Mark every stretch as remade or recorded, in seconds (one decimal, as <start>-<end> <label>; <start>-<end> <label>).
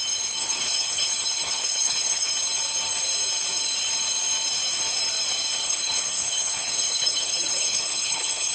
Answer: 0.0-0.4 recorded; 0.4-2.3 remade; 2.3-5.6 recorded; 5.6-8.5 remade